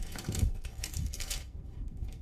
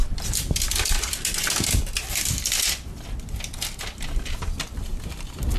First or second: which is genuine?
second